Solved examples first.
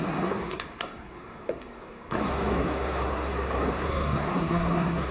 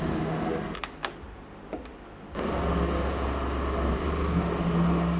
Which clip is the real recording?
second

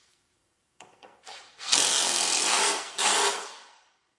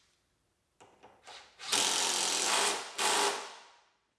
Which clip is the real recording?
second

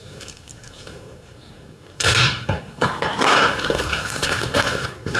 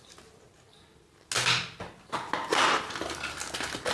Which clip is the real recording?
second